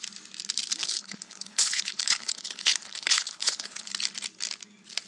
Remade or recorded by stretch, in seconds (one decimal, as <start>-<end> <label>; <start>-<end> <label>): 0.0-0.8 recorded; 0.8-3.9 remade; 3.9-5.1 recorded